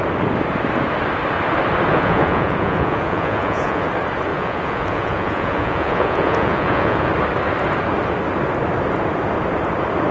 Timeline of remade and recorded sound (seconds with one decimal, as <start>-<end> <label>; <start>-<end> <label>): 0.0-1.9 recorded; 1.9-3.9 remade; 3.9-4.3 recorded; 4.3-7.1 remade; 7.1-10.1 recorded

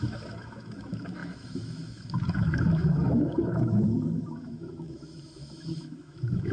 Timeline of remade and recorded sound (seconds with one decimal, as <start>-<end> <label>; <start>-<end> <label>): 0.0-6.5 remade